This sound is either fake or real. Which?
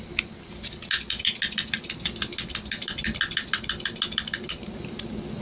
real